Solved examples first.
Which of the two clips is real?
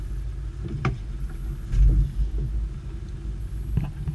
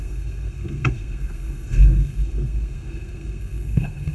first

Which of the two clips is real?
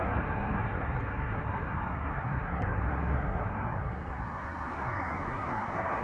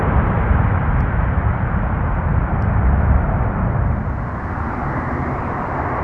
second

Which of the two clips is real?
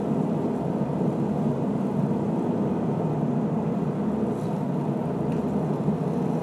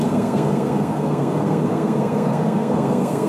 first